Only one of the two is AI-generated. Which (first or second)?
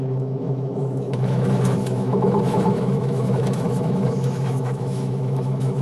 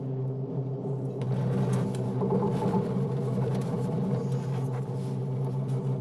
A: first